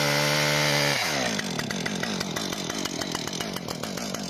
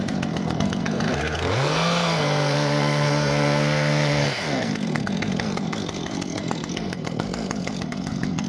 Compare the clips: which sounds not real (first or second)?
second